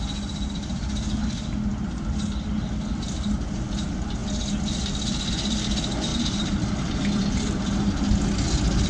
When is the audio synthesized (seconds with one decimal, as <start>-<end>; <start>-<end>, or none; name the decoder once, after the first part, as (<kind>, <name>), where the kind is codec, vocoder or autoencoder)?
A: 6.1-7.9 (vocoder, BigVGAN v2)